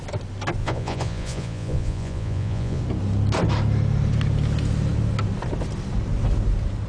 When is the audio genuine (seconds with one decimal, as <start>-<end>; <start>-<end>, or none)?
0.0-0.6; 2.8-6.9

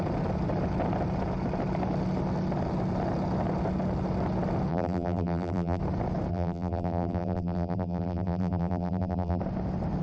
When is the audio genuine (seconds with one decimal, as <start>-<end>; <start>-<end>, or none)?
0.0-4.7; 5.8-6.3; 9.4-10.0

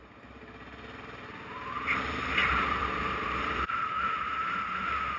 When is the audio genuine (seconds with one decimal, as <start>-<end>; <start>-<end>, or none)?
0.0-2.4; 3.9-5.2